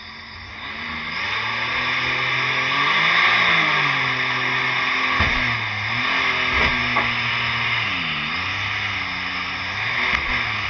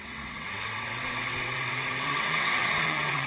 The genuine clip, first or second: first